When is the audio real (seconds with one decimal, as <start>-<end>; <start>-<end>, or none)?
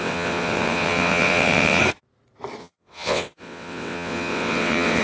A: 1.8-2.6